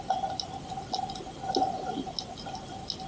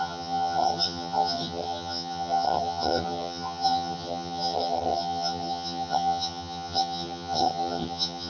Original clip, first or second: first